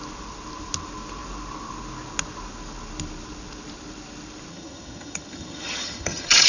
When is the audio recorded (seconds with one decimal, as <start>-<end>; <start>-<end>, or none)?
0.0-4.5